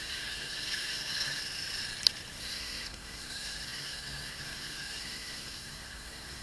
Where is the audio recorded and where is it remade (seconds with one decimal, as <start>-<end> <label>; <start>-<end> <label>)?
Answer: 0.0-1.4 remade; 1.4-2.4 recorded; 2.4-6.4 remade